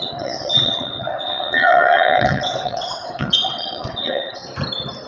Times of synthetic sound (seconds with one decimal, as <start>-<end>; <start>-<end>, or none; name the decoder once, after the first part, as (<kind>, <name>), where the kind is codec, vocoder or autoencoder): 0.0-4.4 (vocoder, WaveNeXt)